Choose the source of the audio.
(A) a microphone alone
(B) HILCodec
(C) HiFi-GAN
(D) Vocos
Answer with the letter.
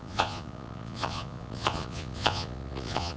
D